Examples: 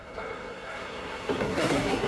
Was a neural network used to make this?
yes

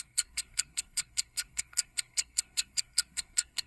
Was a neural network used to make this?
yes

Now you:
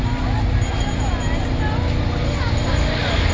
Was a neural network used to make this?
no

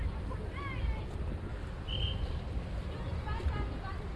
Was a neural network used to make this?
no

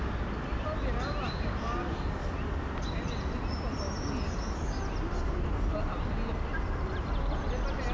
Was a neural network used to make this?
no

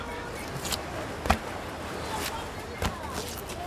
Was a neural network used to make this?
no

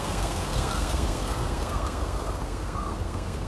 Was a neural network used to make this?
yes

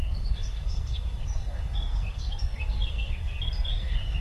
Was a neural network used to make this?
yes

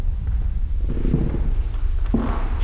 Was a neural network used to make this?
no